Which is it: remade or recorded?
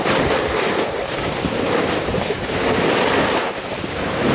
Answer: recorded